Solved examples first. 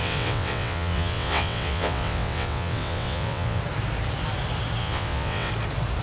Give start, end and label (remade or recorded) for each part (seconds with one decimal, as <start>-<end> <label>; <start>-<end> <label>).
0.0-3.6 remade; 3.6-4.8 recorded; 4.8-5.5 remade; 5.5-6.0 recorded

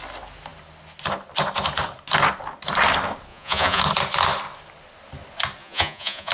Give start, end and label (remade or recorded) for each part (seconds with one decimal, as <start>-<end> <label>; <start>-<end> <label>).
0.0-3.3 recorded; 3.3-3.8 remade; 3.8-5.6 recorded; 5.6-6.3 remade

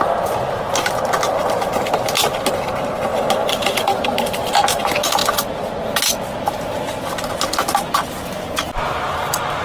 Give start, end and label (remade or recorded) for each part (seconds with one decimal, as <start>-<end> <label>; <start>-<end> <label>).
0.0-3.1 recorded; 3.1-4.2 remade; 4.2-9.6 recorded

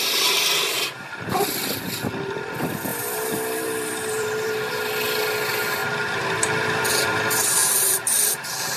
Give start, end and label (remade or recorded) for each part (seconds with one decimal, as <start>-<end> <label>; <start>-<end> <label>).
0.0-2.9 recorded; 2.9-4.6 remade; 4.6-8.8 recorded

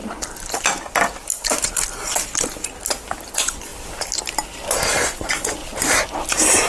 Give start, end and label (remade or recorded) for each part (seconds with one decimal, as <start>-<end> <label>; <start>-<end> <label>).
0.0-3.3 recorded; 3.3-3.7 remade; 3.7-4.9 recorded; 4.9-5.6 remade; 5.6-6.7 recorded

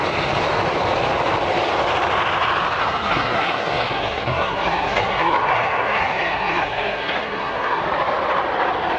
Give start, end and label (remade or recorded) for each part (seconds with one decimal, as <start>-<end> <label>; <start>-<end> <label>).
0.0-2.8 recorded; 2.8-7.8 remade; 7.8-9.0 recorded

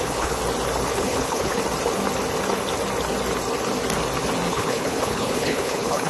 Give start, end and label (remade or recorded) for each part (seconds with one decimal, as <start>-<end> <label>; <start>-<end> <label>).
0.0-0.4 remade; 0.4-0.9 recorded; 0.9-1.6 remade; 1.6-4.5 recorded; 4.5-6.1 remade